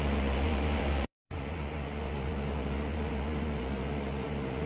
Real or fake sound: fake